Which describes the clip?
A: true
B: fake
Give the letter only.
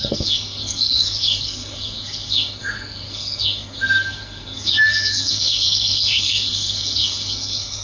B